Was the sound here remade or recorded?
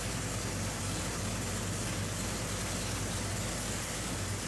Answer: recorded